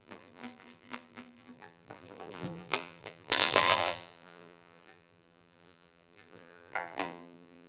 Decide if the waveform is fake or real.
fake